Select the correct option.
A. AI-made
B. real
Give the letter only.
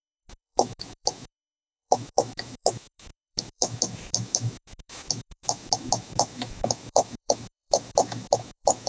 A